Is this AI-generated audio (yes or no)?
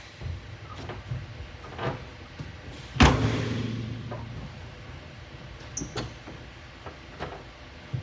no